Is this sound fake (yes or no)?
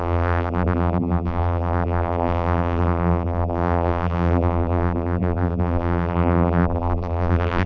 yes